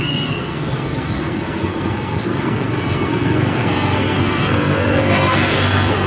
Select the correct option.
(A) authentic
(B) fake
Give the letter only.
B